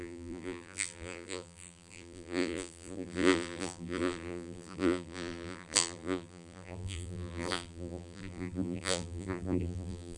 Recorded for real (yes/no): no